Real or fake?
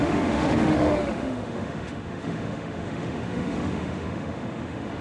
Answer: fake